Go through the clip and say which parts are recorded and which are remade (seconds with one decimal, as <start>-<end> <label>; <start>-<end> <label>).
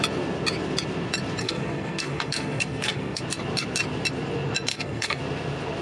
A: 0.0-1.4 recorded; 1.4-3.2 remade; 3.2-4.7 recorded; 4.7-5.2 remade; 5.2-5.8 recorded